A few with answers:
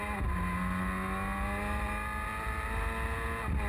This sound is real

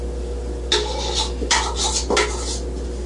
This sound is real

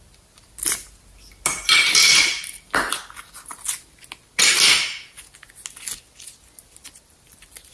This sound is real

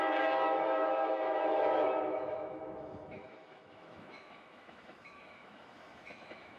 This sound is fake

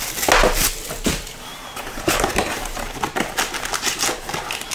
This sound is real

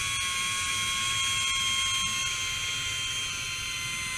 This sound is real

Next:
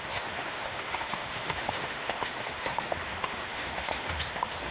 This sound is fake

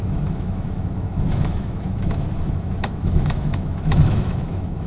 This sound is fake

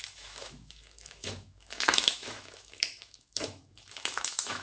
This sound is fake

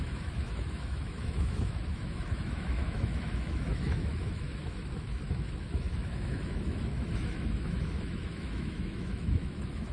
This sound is fake